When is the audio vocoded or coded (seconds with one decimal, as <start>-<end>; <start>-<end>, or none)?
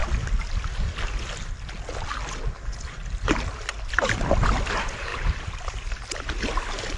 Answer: 4.2-7.0